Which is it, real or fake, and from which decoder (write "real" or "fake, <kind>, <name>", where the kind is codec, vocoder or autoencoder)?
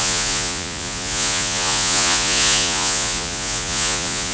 fake, vocoder, Vocos